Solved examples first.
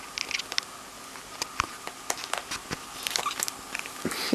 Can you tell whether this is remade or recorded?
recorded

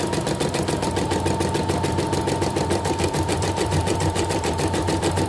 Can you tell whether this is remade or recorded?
remade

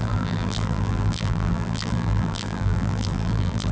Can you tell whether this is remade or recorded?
remade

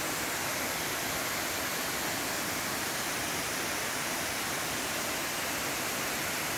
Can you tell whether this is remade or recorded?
remade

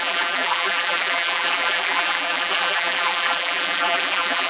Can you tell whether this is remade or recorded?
remade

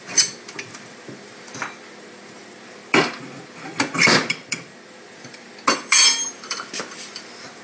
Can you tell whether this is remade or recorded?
remade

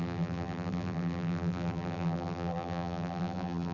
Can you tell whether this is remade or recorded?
remade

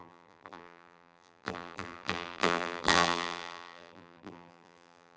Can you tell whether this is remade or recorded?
remade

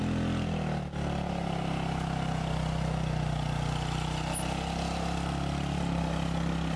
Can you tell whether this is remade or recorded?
recorded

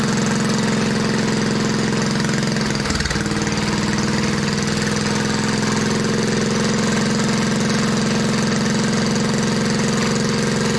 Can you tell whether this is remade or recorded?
recorded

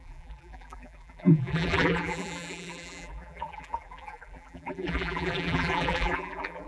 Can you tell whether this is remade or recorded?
remade